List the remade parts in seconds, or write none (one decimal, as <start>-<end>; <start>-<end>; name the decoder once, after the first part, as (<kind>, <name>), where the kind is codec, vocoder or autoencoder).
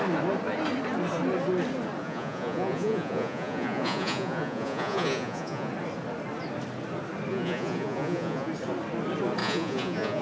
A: 2.0-5.7 (vocoder, Vocos); 7.3-8.5; 9.4-10.2